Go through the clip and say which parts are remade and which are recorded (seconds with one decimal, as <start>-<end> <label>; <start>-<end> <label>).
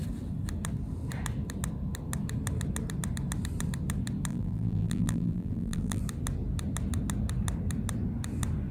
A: 0.0-4.3 recorded; 4.3-6.0 remade; 6.0-8.7 recorded